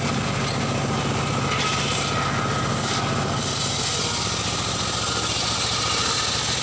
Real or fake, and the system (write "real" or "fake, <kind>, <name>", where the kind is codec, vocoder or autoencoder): real